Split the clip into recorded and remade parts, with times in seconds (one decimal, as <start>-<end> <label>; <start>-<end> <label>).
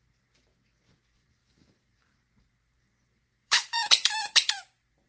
0.0-1.4 recorded; 1.4-4.5 remade; 4.5-5.1 recorded